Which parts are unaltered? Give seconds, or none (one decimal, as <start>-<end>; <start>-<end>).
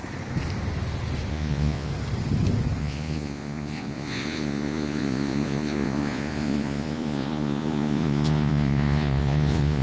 0.0-1.3; 1.9-2.8